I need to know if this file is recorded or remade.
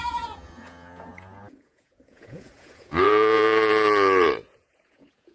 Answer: remade